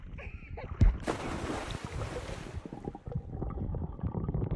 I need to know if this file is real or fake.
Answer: real